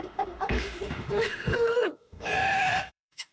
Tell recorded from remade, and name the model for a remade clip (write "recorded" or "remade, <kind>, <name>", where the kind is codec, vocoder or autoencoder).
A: remade, autoencoder, DAC-VAE